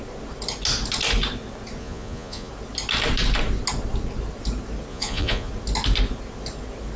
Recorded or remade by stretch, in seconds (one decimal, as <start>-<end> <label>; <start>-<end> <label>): 0.0-1.8 recorded; 1.8-2.5 remade; 2.5-4.9 recorded; 4.9-5.5 remade; 5.5-7.0 recorded